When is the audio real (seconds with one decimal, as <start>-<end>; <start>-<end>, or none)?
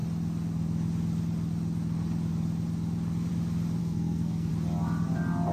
0.0-3.8; 4.5-5.5